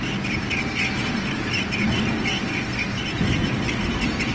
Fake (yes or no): no